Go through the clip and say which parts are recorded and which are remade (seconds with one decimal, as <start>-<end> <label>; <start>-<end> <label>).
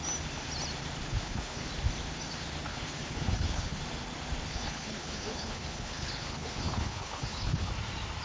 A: 0.0-1.1 recorded; 1.1-1.7 remade; 1.7-2.7 recorded; 2.7-3.8 remade; 3.8-4.5 recorded; 4.5-7.7 remade; 7.7-8.2 recorded